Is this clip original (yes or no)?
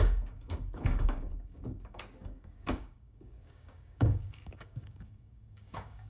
no